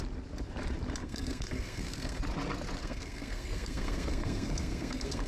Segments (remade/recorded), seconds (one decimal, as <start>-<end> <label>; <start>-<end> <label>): 0.0-1.0 recorded; 1.0-2.2 remade; 2.2-2.8 recorded; 2.8-5.3 remade